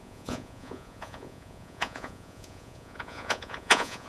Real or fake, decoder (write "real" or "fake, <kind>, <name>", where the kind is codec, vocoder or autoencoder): fake, vocoder, Vocos